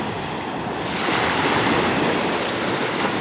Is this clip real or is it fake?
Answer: real